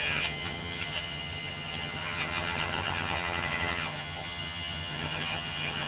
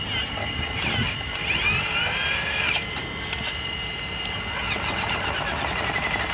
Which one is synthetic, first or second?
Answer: first